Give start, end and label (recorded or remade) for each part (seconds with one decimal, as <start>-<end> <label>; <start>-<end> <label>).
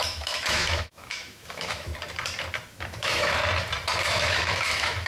0.0-1.9 remade; 1.9-2.7 recorded; 2.7-3.4 remade; 3.4-4.0 recorded; 4.0-5.1 remade